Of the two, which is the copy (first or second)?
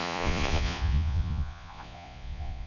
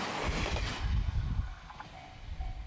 first